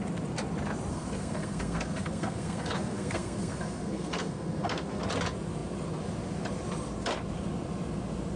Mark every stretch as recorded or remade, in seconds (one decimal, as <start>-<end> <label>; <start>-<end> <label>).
0.0-0.9 recorded; 0.9-5.0 remade; 5.0-8.4 recorded